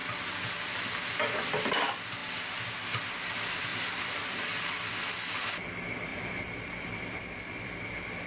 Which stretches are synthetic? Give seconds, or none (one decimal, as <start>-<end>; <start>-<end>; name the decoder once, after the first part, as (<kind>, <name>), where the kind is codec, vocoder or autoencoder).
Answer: 3.7-4.3 (vocoder, BigVGAN v2); 6.1-8.3